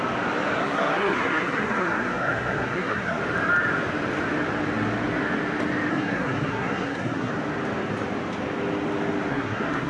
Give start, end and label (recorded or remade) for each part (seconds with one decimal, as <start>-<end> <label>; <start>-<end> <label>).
0.0-0.6 recorded; 0.6-3.2 remade; 3.2-5.9 recorded; 5.9-7.3 remade; 7.3-9.3 recorded; 9.3-9.9 remade